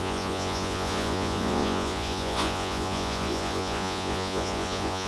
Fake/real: fake